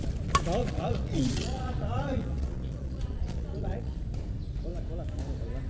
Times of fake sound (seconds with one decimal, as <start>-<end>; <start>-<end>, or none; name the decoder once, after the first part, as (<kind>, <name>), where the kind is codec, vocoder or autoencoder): 0.6-4.0 (vocoder, Vocos)